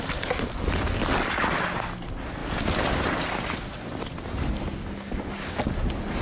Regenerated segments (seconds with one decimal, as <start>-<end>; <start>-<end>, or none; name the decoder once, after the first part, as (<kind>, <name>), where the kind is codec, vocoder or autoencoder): none